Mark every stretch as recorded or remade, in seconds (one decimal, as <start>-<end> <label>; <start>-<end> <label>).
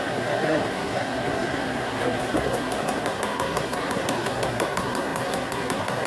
0.0-6.1 remade